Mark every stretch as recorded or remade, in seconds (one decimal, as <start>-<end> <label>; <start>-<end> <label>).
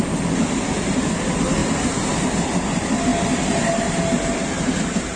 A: 0.0-5.2 recorded